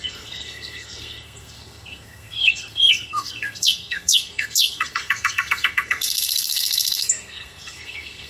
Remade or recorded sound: remade